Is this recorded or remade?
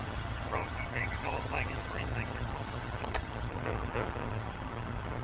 remade